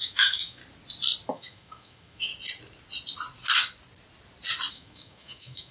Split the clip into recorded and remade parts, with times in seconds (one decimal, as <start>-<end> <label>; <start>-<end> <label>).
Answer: 0.0-0.6 remade; 0.6-1.3 recorded; 1.3-2.3 remade; 2.3-4.7 recorded; 4.7-5.7 remade